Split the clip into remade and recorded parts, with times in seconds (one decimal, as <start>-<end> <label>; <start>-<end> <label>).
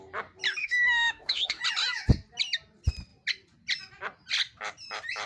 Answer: 0.0-0.6 recorded; 0.6-1.6 remade; 1.6-5.3 recorded